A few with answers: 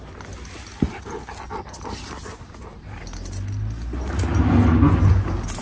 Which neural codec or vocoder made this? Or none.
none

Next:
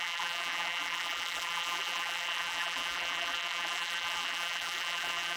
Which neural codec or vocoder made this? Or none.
vocoder, BigVGAN v2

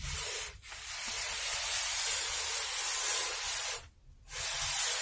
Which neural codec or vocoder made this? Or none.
none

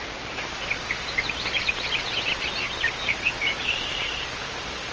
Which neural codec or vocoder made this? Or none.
vocoder, BigVGAN v2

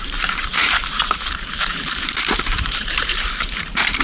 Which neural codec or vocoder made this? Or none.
vocoder, BigVGAN v2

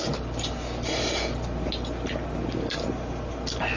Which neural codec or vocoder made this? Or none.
none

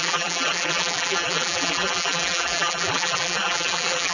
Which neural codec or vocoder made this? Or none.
vocoder, BigVGAN v2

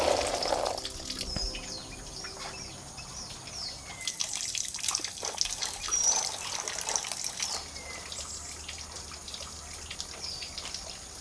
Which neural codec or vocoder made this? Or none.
none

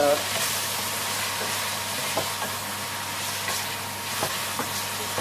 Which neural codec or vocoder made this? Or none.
none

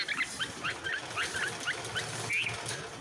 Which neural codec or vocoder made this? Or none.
none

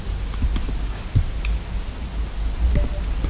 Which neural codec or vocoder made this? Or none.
none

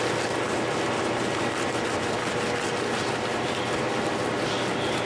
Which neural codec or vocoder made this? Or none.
none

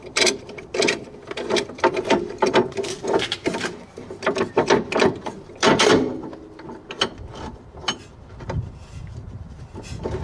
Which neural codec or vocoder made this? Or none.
vocoder, BigVGAN v2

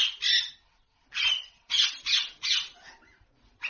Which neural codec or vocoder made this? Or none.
none